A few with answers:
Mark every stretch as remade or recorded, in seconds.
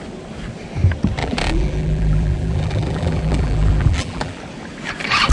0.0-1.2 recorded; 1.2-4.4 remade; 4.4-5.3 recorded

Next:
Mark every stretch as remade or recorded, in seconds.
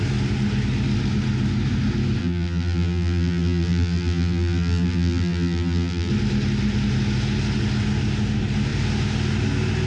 0.0-2.2 recorded; 2.2-6.1 remade; 6.1-9.9 recorded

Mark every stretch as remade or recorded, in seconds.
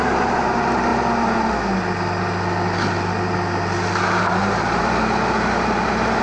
0.0-0.9 remade; 0.9-4.2 recorded; 4.2-6.2 remade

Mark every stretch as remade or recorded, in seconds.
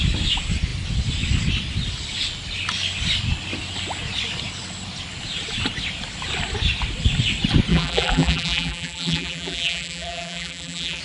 0.0-7.7 recorded; 7.7-11.0 remade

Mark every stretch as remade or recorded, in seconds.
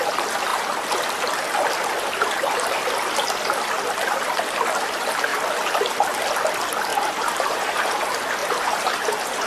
0.0-6.9 recorded; 6.9-8.0 remade; 8.0-8.4 recorded; 8.4-9.5 remade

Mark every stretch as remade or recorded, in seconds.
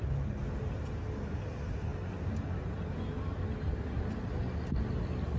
0.0-5.4 recorded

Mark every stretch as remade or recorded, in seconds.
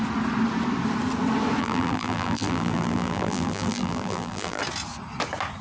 0.0-1.6 recorded; 1.6-4.6 remade; 4.6-5.6 recorded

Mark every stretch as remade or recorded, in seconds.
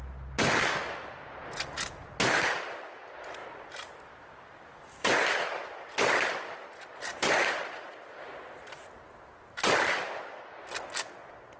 0.0-11.6 recorded